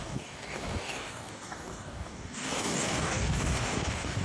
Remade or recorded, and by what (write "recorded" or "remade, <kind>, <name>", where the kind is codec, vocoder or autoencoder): remade, codec, DAC